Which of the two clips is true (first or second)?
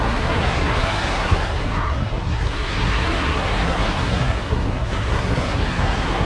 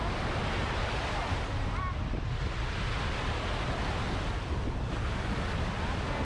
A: second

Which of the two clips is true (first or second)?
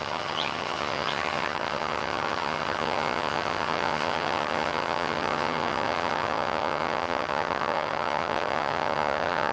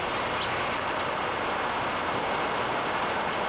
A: second